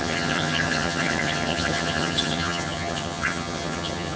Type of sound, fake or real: fake